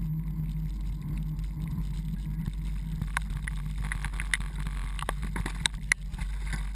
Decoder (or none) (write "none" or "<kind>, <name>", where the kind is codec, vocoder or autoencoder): none